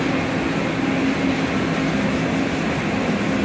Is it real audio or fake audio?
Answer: real